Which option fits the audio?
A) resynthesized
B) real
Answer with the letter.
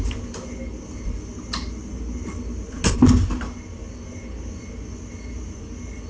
B